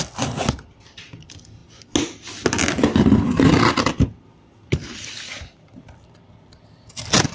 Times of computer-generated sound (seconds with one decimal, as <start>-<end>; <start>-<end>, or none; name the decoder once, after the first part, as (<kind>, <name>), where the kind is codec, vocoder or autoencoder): none